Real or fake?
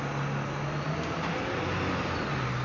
real